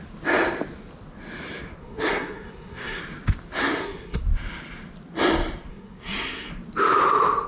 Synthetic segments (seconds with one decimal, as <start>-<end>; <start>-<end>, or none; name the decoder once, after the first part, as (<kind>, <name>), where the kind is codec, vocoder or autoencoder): 1.8-3.0 (codec, SNAC); 3.6-4.2; 5.7-6.5